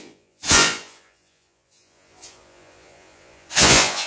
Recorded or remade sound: remade